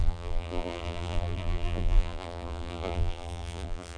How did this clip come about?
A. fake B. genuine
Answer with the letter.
A